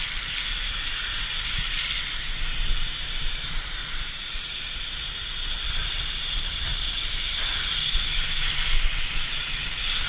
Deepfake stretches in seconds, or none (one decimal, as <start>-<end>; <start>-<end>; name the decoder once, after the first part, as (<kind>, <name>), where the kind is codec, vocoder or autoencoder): 3.8-4.8 (vocoder, BigVGAN v2); 5.8-7.6